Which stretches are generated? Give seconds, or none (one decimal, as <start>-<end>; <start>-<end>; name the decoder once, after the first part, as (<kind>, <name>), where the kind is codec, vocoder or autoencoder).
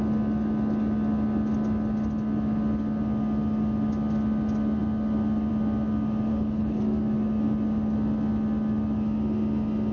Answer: 6.3-6.8 (codec, HILCodec)